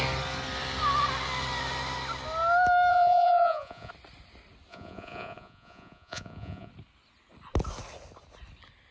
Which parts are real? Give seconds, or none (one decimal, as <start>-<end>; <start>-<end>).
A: 0.0-2.9; 3.9-4.7; 6.7-8.9